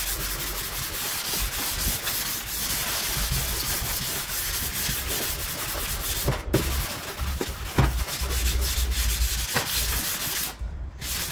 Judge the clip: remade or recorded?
recorded